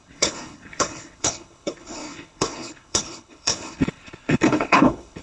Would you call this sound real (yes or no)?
no